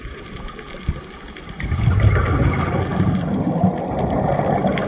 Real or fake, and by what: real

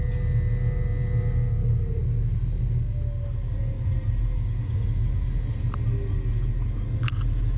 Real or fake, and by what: real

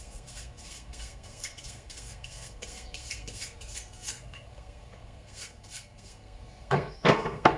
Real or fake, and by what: fake, codec, SNAC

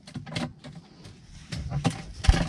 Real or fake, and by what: real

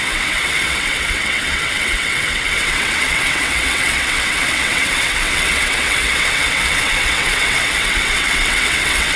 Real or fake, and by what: fake, vocoder, WaveNeXt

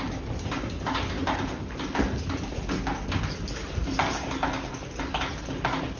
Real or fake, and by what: real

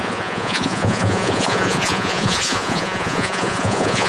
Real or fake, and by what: fake, vocoder, Vocos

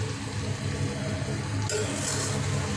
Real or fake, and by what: real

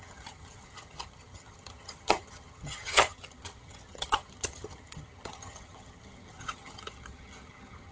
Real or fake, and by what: fake, vocoder, HiFi-GAN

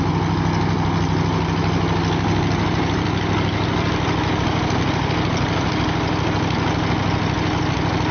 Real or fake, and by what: real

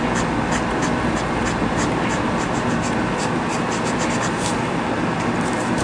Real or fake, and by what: real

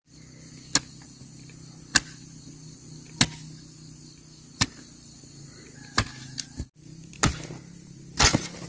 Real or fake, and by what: real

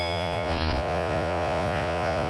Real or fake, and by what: fake, vocoder, Vocos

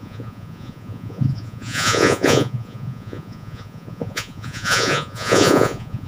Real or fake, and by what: fake, vocoder, Vocos